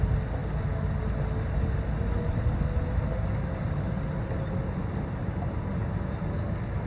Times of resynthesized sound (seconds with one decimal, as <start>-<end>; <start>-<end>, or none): none